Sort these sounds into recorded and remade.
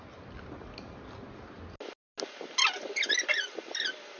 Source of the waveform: recorded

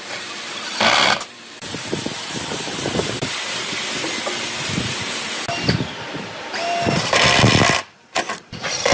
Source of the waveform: remade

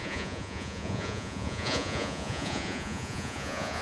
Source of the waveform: remade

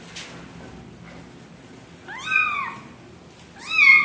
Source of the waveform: recorded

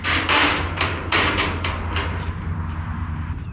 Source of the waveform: remade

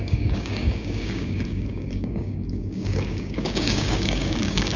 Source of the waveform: remade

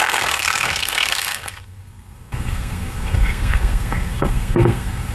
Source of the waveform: remade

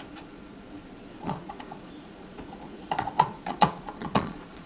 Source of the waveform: remade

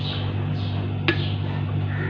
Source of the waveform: recorded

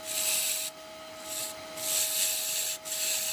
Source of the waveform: recorded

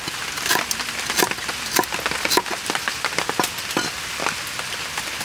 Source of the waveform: recorded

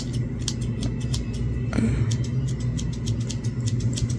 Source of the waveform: recorded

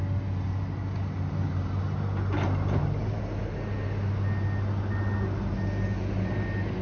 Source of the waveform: recorded